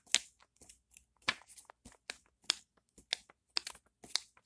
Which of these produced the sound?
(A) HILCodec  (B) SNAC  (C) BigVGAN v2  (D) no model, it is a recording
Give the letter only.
D